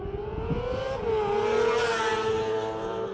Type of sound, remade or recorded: recorded